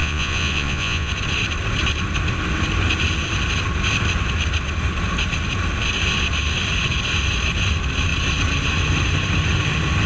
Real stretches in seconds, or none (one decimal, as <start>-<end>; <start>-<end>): 1.1-10.1